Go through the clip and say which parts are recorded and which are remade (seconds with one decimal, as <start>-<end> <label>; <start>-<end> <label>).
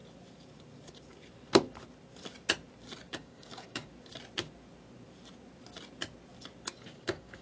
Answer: 0.0-3.1 recorded; 3.1-3.9 remade; 3.9-6.7 recorded; 6.7-7.4 remade